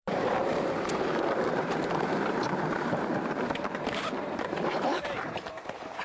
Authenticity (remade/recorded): remade